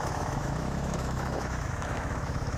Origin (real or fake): fake